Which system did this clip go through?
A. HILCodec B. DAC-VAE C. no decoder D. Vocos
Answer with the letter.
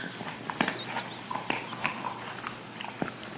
C